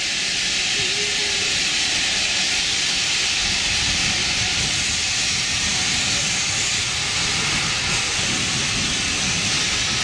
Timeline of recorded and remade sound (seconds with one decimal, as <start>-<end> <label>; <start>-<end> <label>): 0.0-10.0 recorded